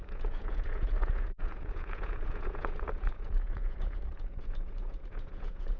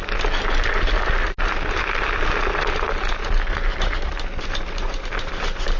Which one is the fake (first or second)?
first